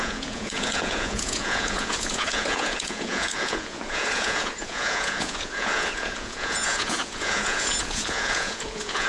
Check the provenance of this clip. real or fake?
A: fake